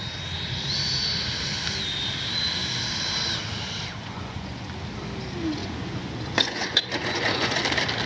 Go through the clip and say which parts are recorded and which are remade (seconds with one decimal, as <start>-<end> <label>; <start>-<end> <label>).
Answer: 0.0-3.9 recorded; 3.9-4.7 remade; 4.7-5.6 recorded; 5.6-7.6 remade; 7.6-8.1 recorded